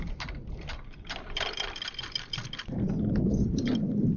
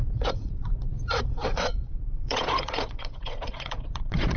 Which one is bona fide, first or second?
first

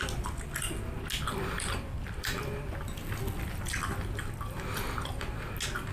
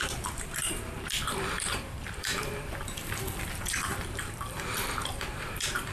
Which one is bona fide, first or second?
first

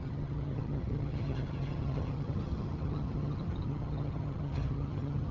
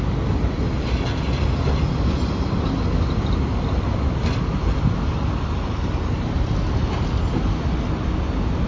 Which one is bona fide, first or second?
second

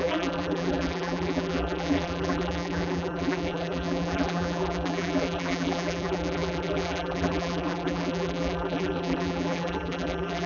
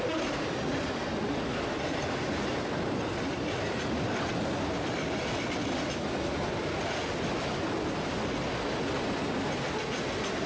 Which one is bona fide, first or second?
second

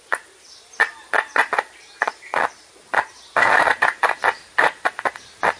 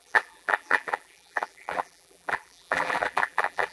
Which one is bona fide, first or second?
first